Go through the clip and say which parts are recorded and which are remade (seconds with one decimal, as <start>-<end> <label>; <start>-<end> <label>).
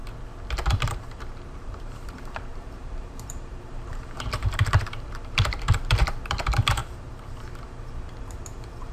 0.0-0.7 recorded; 0.7-8.9 remade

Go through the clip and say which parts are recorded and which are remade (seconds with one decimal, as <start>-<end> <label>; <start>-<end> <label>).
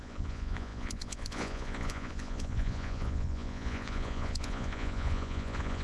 0.0-5.8 remade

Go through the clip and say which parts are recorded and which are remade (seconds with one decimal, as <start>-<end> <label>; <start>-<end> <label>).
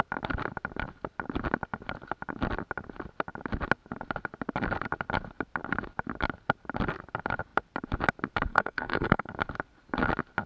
0.0-8.5 recorded; 8.5-9.3 remade; 9.3-10.5 recorded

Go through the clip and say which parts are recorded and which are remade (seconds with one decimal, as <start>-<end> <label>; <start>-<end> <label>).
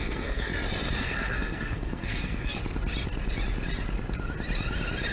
0.0-0.5 remade; 0.5-1.0 recorded; 1.0-2.6 remade; 2.6-5.1 recorded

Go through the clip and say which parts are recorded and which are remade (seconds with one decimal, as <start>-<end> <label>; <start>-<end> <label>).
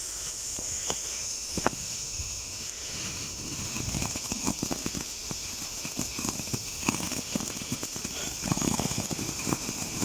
0.0-8.0 remade; 8.0-8.5 recorded; 8.5-10.0 remade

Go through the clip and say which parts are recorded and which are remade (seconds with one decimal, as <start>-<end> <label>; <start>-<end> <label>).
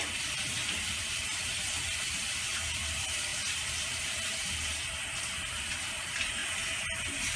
0.0-3.3 remade; 3.3-5.7 recorded; 5.7-6.4 remade; 6.4-7.4 recorded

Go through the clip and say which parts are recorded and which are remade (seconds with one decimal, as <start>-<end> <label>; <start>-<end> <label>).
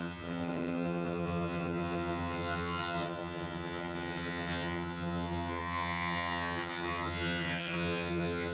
0.0-8.5 remade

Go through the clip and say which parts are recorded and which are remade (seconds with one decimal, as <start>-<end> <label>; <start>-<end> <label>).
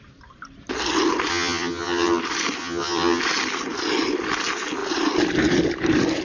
0.0-1.3 recorded; 1.3-2.2 remade; 2.2-2.6 recorded; 2.6-3.2 remade; 3.2-6.2 recorded